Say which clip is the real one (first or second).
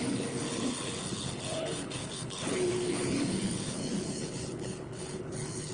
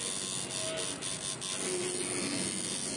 second